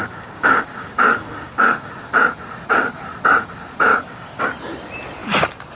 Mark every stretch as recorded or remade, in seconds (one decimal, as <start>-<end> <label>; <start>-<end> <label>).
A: 0.0-1.9 remade; 1.9-3.9 recorded; 3.9-4.5 remade; 4.5-5.8 recorded